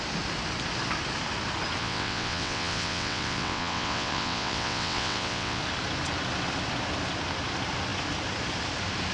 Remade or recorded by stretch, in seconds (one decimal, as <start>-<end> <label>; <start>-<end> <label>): 0.0-1.8 recorded; 1.8-5.6 remade; 5.6-9.1 recorded